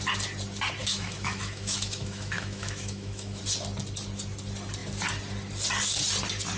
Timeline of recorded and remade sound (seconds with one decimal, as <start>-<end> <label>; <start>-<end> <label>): 0.0-0.8 recorded; 0.8-3.4 remade; 3.4-6.6 recorded